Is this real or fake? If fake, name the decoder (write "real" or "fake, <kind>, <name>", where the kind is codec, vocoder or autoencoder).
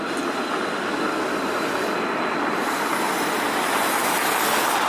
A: real